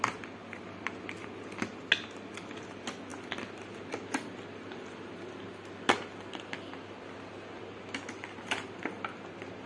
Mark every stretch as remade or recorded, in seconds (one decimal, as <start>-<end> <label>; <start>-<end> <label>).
0.0-9.7 recorded